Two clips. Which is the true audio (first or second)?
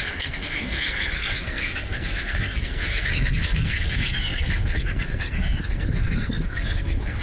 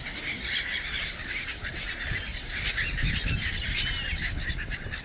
second